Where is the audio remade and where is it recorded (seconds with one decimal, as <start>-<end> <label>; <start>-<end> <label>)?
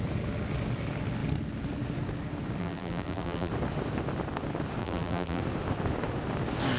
0.0-2.6 recorded; 2.6-3.5 remade; 3.5-4.8 recorded; 4.8-5.4 remade; 5.4-6.8 recorded